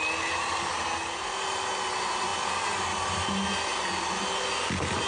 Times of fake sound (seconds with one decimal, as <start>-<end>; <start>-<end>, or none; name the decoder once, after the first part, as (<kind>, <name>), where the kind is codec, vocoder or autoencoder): none